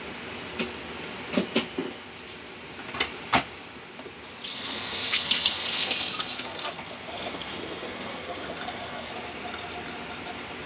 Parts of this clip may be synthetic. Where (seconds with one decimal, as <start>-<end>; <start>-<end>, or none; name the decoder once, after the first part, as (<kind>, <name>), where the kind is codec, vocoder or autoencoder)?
4.5-9.1 (codec, SNAC)